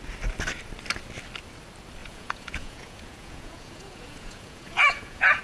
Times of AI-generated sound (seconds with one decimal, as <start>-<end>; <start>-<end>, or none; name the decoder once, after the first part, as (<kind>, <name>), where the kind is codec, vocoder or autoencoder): 2.0-5.4 (vocoder, Vocos)